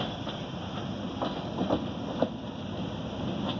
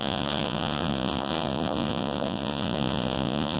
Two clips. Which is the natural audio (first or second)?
first